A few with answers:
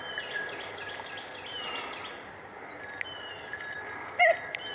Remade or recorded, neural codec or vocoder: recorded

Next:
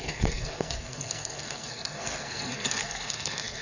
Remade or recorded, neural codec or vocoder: remade, codec, SNAC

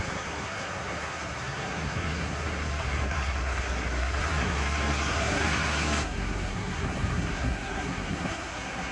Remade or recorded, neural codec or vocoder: remade, codec, SNAC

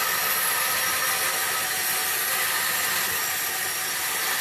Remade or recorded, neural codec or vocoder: recorded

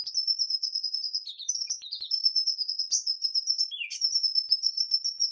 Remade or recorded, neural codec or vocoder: remade, vocoder, BigVGAN v2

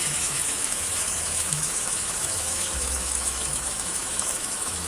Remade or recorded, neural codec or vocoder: remade, autoencoder, DAC-VAE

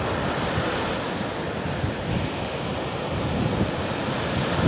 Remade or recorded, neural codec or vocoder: recorded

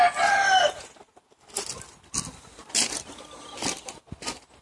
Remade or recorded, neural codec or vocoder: recorded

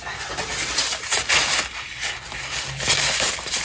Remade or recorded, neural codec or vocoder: recorded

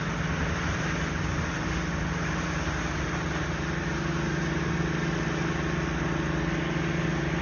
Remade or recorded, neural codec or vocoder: recorded